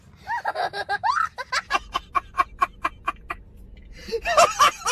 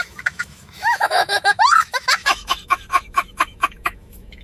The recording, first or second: first